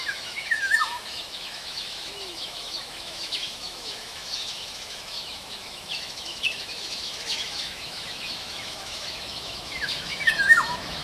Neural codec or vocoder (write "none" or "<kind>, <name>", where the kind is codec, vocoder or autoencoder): autoencoder, DAC-VAE